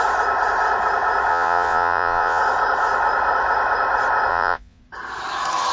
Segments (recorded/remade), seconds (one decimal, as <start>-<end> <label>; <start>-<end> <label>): 0.0-1.3 recorded; 1.3-2.4 remade; 2.4-4.3 recorded; 4.3-4.8 remade; 4.8-5.7 recorded